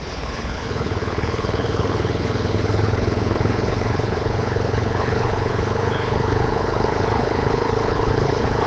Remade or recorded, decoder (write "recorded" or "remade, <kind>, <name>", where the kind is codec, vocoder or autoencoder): remade, codec, HILCodec